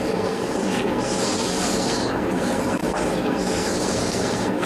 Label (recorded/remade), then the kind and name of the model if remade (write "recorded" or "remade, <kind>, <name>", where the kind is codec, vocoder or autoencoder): remade, codec, SNAC